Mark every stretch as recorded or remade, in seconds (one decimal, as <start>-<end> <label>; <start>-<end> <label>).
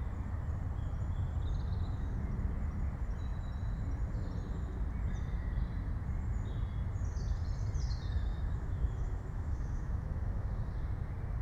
0.0-8.3 recorded; 8.3-10.7 remade; 10.7-11.4 recorded